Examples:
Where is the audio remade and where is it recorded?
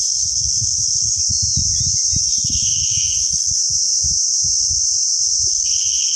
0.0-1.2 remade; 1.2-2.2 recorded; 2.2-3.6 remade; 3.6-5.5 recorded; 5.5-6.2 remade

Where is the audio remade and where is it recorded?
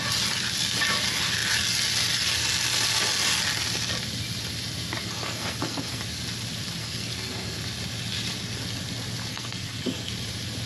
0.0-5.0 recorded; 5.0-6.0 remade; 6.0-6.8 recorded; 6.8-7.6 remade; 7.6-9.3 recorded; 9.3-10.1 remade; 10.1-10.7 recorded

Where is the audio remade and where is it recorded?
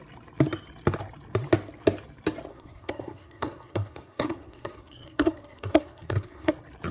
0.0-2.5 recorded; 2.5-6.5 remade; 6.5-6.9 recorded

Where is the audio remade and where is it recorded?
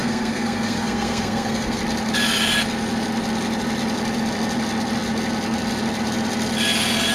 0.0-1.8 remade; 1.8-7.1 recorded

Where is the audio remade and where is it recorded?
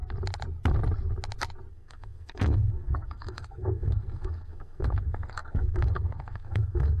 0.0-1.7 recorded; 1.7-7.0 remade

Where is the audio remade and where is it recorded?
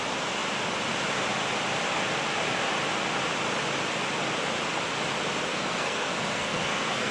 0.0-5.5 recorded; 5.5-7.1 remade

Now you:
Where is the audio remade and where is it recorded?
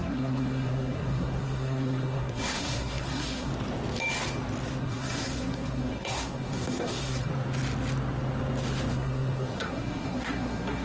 0.0-3.5 remade; 3.5-4.8 recorded; 4.8-7.3 remade; 7.3-8.9 recorded; 8.9-10.8 remade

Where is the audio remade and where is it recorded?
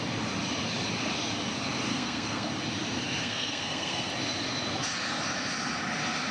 0.0-1.9 recorded; 1.9-2.5 remade; 2.5-3.2 recorded; 3.2-4.1 remade; 4.1-6.3 recorded